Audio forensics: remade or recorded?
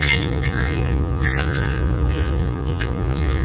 remade